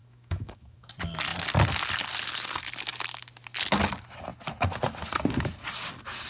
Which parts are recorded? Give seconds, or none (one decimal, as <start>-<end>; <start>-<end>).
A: 0.9-6.3